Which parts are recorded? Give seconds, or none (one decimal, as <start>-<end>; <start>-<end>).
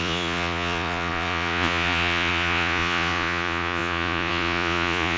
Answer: none